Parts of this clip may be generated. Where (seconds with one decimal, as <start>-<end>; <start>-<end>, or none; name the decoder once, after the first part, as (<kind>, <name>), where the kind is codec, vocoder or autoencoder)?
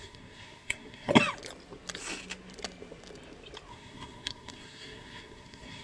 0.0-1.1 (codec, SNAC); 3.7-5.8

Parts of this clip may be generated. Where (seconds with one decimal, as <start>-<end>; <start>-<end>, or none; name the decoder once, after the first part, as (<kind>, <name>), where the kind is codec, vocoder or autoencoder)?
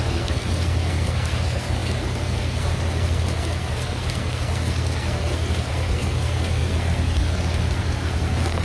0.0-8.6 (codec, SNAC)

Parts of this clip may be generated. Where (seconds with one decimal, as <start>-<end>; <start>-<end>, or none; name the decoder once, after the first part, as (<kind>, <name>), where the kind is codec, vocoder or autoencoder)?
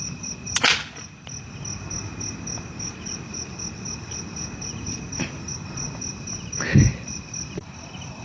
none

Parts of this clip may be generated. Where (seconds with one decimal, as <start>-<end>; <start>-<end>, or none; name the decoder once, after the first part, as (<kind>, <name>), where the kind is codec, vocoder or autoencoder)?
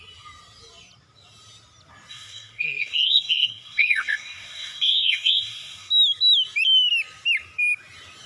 2.1-5.9 (codec, SNAC)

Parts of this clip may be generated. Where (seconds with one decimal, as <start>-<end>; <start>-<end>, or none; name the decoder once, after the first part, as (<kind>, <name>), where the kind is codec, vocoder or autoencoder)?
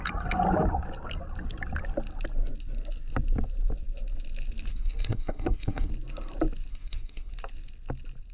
4.7-5.9 (codec, SNAC); 6.7-7.3